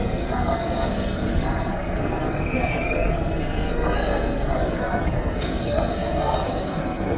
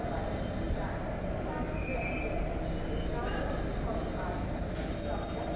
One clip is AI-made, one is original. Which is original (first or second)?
second